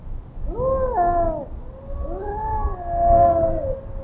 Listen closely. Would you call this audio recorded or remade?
recorded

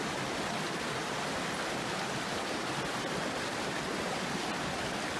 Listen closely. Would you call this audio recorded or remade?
recorded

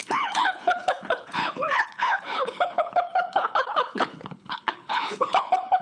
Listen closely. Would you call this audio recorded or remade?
remade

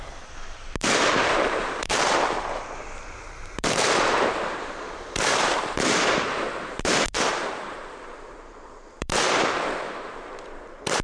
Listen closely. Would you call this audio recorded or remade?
remade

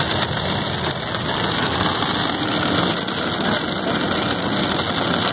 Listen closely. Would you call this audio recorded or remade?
recorded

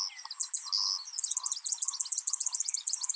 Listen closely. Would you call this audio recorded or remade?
recorded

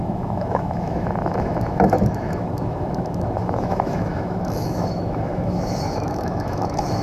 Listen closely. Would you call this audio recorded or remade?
remade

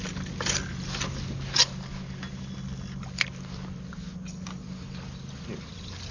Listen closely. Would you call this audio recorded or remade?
recorded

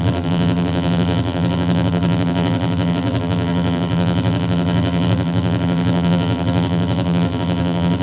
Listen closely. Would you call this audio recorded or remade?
remade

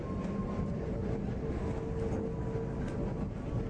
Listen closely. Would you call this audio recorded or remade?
recorded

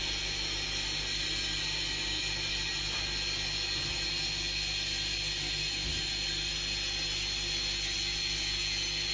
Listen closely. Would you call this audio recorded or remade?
recorded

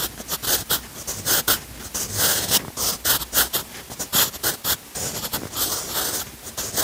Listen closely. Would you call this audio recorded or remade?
recorded